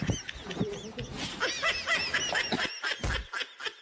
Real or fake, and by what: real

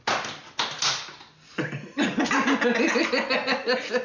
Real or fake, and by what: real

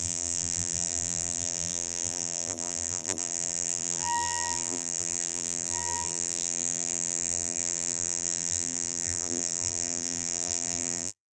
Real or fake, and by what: fake, vocoder, BigVGAN v2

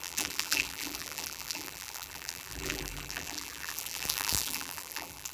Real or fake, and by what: fake, vocoder, BigVGAN v2